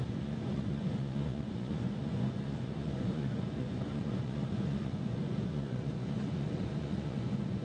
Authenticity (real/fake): fake